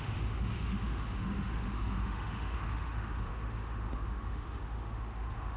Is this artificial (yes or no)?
yes